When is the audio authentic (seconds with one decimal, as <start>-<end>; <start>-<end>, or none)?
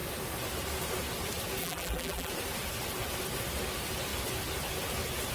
0.0-1.6; 2.3-5.3